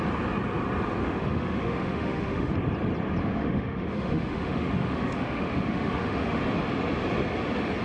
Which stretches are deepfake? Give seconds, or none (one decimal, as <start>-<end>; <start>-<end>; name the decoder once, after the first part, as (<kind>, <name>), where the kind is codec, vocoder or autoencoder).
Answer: 1.0-2.5 (autoencoder, DAC-VAE); 3.2-6.4